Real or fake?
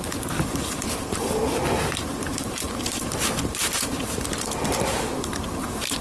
fake